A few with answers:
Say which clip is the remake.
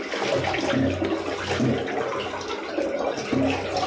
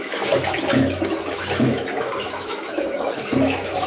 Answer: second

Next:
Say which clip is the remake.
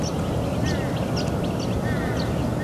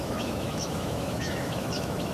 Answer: second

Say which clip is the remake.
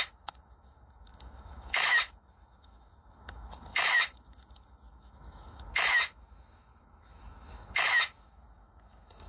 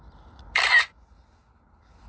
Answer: first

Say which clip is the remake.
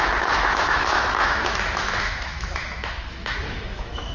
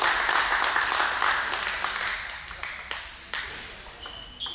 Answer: first